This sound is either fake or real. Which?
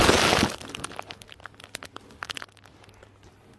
real